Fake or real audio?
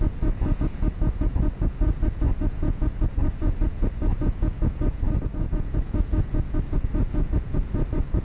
fake